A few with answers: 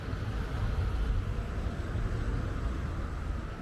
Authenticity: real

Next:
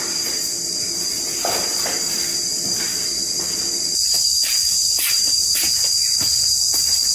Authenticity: real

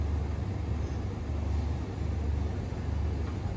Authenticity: real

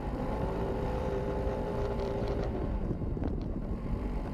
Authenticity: fake